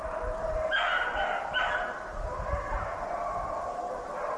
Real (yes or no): yes